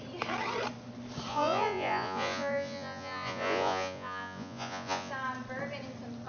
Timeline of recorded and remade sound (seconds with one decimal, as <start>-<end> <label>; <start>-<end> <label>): 0.0-1.3 recorded; 1.3-5.1 remade; 5.1-6.3 recorded